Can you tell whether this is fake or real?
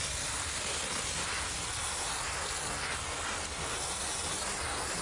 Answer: real